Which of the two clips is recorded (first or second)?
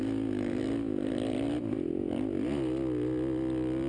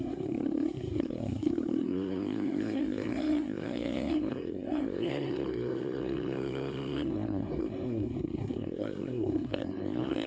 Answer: first